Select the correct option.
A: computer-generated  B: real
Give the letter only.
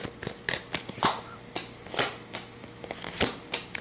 B